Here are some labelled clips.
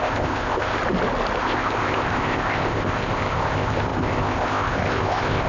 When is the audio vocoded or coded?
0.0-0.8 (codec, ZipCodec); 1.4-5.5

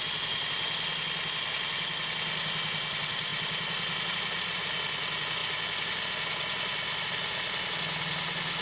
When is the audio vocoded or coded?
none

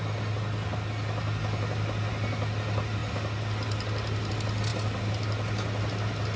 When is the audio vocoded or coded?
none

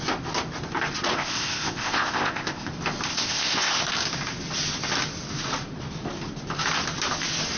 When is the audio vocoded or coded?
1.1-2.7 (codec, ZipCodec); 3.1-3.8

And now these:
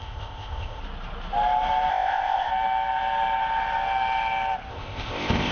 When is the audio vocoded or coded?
0.0-0.8 (codec, ZipCodec); 1.9-2.5; 4.7-5.5